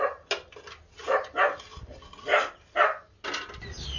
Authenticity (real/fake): real